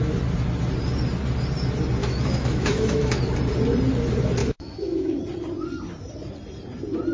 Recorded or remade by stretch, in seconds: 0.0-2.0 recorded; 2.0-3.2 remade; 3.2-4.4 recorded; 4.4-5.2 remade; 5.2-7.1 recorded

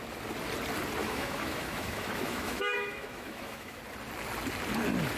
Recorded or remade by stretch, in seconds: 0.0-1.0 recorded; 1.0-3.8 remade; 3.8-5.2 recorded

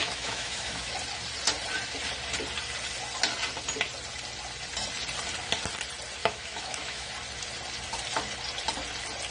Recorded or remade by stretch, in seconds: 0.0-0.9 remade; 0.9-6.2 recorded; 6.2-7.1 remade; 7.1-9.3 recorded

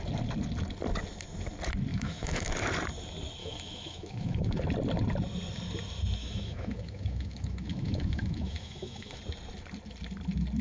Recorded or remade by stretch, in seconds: 0.0-1.9 recorded; 1.9-2.5 remade; 2.5-3.4 recorded; 3.4-4.6 remade; 4.6-6.2 recorded; 6.2-9.2 remade; 9.2-10.6 recorded

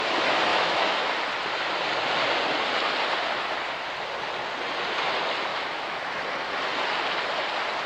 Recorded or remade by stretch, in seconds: 0.0-0.5 recorded; 0.5-1.1 remade; 1.1-5.5 recorded; 5.5-6.2 remade; 6.2-7.9 recorded